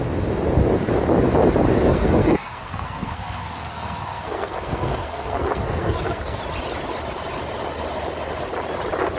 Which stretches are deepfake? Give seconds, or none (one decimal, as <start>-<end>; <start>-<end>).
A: 1.9-6.4

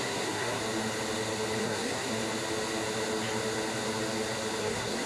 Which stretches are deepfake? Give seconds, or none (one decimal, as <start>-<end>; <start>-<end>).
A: 0.0-0.6; 1.6-2.1; 4.6-5.1

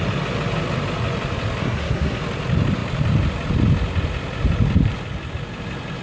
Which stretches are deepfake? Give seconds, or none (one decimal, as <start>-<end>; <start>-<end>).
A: 1.6-2.2

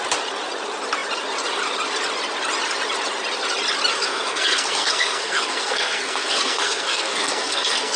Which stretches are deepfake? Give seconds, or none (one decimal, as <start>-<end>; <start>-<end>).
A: 3.9-8.0

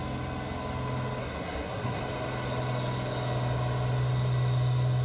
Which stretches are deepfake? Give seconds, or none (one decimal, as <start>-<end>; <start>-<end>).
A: 1.2-2.0

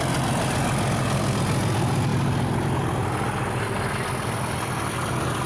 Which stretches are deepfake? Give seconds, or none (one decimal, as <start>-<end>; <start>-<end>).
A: none

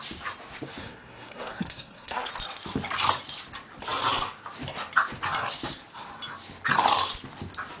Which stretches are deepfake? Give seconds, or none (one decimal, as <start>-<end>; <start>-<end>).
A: 0.8-2.3